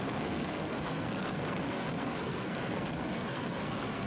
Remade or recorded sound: remade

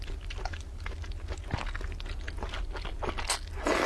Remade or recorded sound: recorded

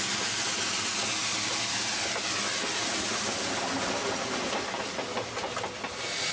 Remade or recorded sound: recorded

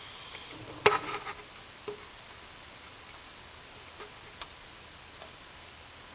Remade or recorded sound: recorded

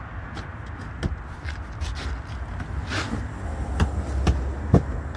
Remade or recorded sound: recorded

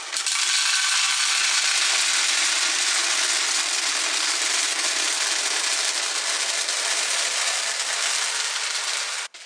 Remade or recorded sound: recorded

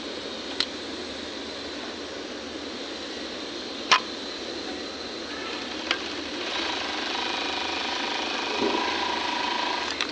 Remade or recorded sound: recorded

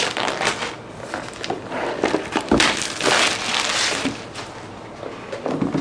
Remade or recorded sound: recorded